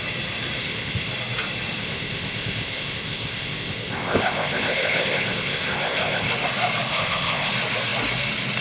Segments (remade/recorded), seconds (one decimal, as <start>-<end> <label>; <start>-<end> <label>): 0.0-0.6 recorded; 0.6-1.1 remade; 1.1-1.8 recorded; 1.8-6.3 remade; 6.3-6.9 recorded; 6.9-7.5 remade; 7.5-8.6 recorded